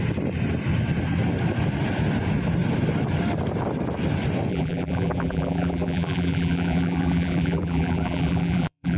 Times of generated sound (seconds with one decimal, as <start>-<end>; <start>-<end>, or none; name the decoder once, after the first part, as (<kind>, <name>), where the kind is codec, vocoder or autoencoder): 4.5-9.0 (vocoder, BigVGAN v2)